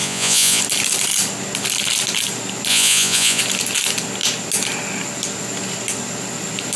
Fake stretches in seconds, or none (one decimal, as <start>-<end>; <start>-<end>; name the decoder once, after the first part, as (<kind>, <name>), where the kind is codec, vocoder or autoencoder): 0.0-0.6 (vocoder, Vocos); 2.7-3.4